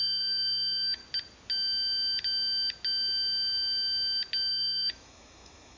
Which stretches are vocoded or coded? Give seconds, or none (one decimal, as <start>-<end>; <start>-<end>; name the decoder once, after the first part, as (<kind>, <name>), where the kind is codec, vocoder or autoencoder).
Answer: 0.0-1.0 (autoencoder, DAC-VAE); 4.5-5.8